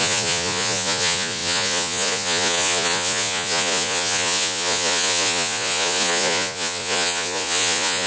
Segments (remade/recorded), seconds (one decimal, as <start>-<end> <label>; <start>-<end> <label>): 0.0-8.1 remade